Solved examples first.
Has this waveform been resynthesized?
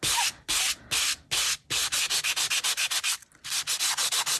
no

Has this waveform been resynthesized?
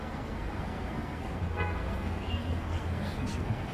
yes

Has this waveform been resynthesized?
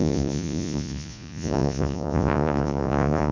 yes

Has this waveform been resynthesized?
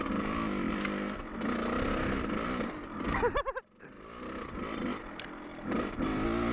no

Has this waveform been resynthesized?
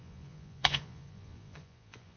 yes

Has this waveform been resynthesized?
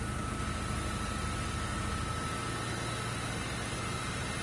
no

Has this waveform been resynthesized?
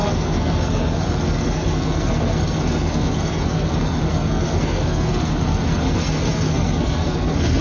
yes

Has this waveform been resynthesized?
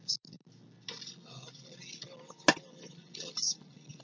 no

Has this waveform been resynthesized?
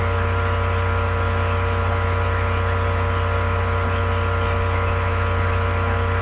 no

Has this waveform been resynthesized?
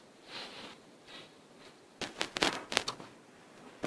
no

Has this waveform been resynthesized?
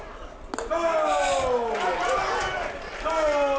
no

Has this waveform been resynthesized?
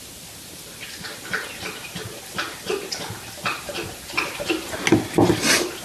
no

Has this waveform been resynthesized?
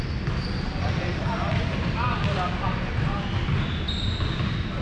no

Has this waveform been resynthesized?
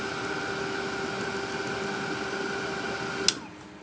no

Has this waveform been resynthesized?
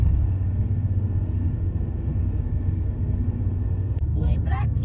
yes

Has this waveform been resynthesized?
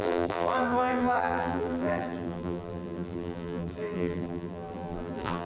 yes